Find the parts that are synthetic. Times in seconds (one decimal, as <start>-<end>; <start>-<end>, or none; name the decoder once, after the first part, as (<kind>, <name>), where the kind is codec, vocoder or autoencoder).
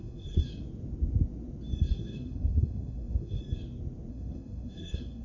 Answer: 0.0-0.4 (codec, SNAC); 1.9-3.4; 4.1-5.2